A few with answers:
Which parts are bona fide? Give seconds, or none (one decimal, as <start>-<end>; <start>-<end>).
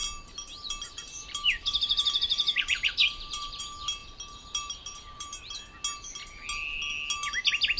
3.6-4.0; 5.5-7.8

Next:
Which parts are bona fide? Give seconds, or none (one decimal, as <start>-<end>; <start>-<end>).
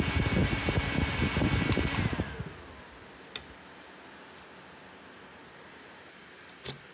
0.0-6.9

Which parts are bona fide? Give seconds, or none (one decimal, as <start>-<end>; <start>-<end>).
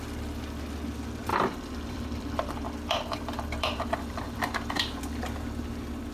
0.0-1.3; 5.0-6.1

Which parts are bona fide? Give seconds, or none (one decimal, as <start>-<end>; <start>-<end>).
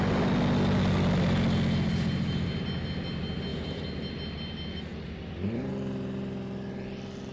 0.0-3.5; 4.1-4.9; 5.7-7.3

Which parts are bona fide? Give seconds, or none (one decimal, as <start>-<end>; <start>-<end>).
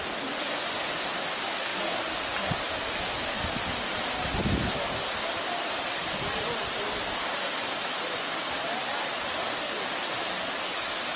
0.0-1.7; 2.6-11.2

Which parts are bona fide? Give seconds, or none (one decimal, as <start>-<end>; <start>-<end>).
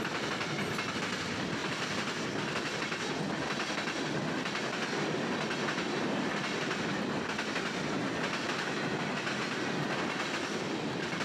0.0-11.2